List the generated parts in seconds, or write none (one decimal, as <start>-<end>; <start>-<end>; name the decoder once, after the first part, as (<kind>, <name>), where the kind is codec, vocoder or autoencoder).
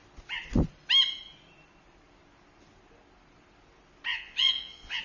4.1-5.0 (vocoder, Vocos)